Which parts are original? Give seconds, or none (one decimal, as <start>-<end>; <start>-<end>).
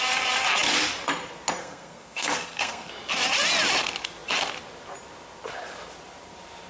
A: 0.0-1.6; 2.9-6.7